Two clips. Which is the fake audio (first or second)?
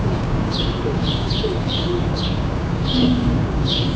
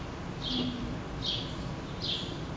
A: first